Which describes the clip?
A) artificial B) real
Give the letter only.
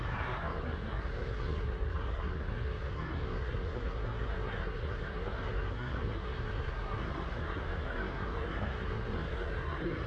A